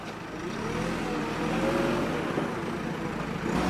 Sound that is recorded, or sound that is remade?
recorded